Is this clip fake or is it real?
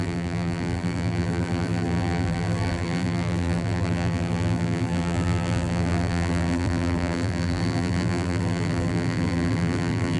fake